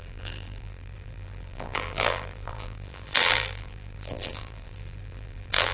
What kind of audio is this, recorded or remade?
remade